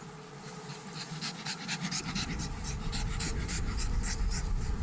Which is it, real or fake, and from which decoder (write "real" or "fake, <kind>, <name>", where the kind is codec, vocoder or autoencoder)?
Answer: real